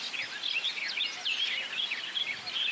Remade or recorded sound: recorded